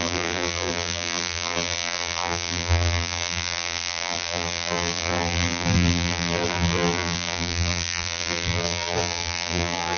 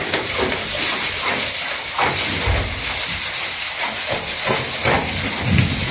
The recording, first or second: second